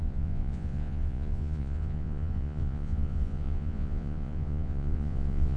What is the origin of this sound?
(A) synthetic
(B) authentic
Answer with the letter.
A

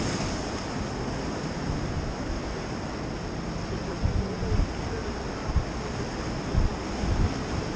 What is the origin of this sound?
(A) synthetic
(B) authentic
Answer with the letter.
B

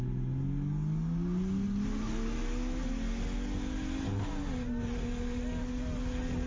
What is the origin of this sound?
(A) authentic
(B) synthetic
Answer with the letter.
A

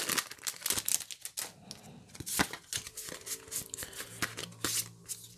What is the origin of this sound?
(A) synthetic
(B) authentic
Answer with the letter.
B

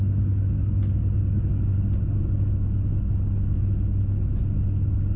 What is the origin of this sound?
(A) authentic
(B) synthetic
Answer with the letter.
A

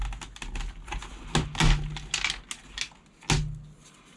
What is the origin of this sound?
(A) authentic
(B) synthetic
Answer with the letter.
A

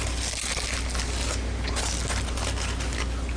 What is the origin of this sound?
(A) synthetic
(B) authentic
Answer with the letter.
B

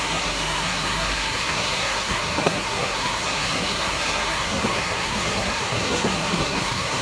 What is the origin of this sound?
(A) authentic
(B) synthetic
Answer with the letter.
B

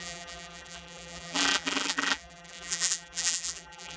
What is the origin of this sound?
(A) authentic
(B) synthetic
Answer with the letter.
B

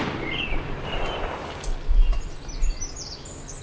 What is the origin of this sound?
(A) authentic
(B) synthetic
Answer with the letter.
B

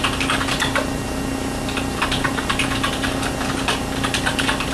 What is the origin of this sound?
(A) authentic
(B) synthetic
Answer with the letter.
A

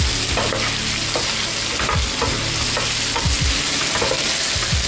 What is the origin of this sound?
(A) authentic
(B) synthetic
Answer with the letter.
A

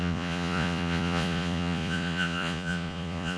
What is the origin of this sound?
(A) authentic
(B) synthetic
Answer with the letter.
B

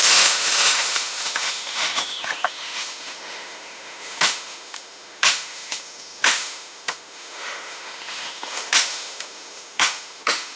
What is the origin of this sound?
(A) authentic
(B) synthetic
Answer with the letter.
B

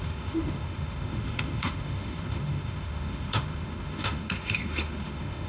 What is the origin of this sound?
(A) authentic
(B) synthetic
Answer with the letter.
B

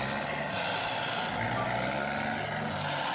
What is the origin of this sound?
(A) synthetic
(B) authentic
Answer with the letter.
B